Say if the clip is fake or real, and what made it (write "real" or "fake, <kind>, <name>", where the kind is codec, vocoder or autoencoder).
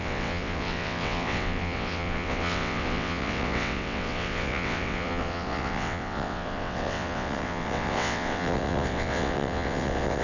fake, vocoder, WaveNeXt